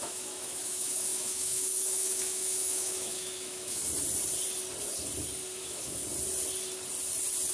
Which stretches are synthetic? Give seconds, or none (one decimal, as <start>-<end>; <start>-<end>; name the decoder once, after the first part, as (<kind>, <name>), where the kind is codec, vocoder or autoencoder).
0.0-3.8 (autoencoder, DAC-VAE); 5.6-6.0